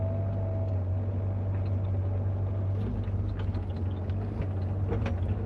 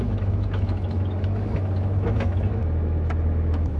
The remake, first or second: second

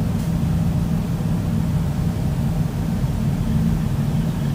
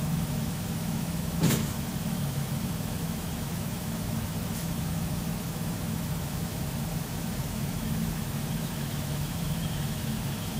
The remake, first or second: second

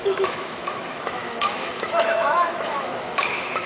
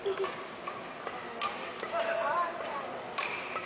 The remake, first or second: first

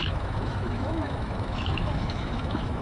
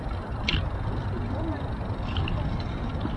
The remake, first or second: first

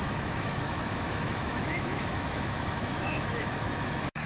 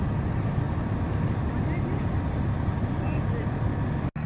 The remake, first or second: first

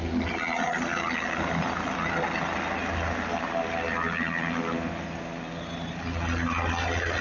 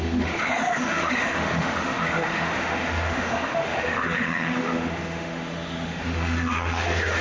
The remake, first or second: second